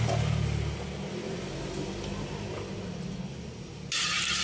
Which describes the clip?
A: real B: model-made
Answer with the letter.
A